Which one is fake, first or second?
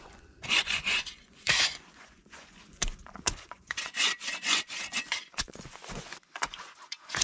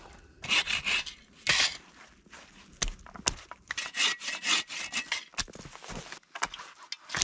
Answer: first